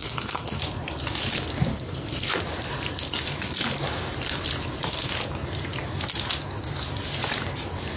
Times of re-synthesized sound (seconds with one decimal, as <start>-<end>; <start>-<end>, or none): 0.0-0.6; 1.7-2.4